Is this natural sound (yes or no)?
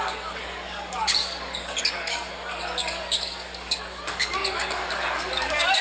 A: no